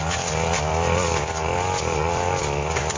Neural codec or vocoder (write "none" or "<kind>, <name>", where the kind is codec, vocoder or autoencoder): none